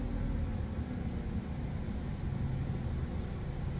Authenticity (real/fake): real